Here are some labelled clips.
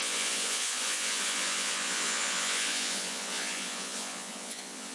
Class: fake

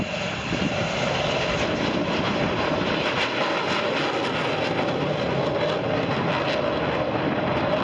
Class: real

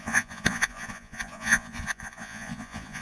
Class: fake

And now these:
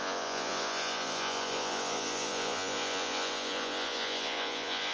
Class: fake